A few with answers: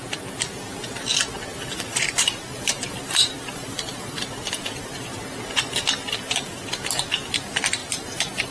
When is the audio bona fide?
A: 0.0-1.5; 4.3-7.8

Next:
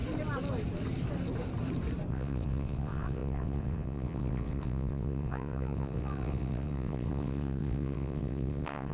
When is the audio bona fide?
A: 0.0-2.1

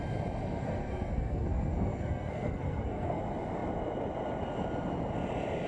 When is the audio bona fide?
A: 0.0-0.4; 3.2-5.7

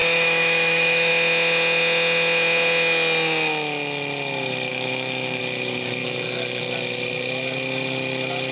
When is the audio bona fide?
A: 1.1-4.7; 5.4-6.0; 6.6-8.5

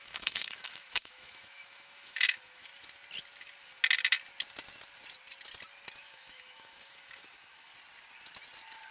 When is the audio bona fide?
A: 2.7-6.0; 7.7-8.9

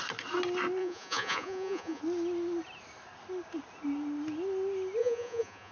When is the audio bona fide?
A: 0.0-0.8; 2.0-5.0